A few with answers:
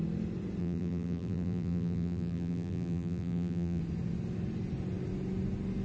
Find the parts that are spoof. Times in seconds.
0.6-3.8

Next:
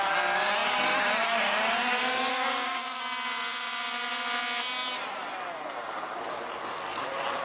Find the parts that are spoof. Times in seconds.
2.3-3.0

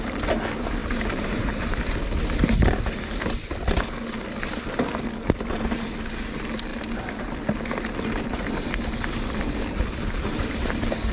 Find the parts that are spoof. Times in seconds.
0.8-2.8

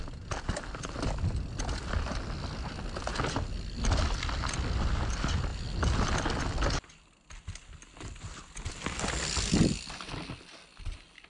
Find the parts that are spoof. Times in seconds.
none

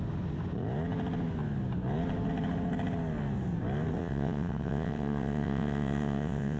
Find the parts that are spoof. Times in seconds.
4.0-6.6

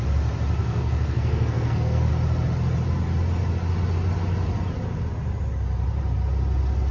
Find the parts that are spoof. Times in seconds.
0.6-2.1